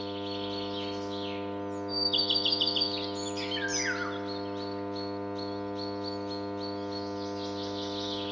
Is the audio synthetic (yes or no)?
no